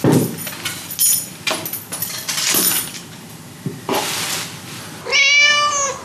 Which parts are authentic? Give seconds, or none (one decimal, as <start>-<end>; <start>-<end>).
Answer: 0.0-2.0; 4.1-6.0